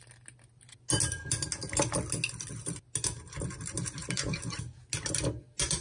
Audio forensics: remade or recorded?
recorded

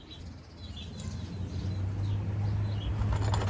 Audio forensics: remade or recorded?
recorded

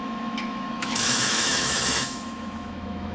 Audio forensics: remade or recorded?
remade